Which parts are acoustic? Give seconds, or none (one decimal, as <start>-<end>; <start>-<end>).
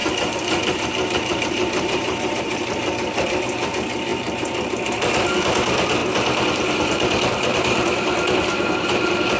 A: 3.4-4.1; 5.0-9.4